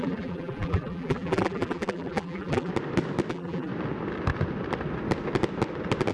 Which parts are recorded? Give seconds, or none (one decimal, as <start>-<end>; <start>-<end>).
2.7-3.3; 3.7-6.1